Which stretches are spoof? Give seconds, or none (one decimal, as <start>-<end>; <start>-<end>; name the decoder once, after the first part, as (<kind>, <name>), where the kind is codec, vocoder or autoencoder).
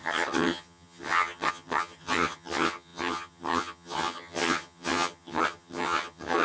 0.0-6.4 (vocoder, HiFi-GAN)